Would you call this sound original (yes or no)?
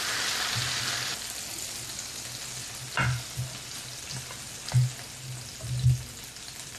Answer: yes